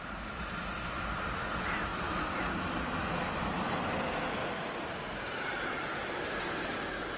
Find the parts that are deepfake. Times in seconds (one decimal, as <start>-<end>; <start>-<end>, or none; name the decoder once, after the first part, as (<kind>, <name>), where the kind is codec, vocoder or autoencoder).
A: none